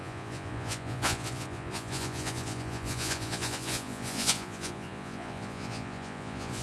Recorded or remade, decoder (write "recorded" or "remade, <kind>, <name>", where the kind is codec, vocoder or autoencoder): remade, vocoder, Vocos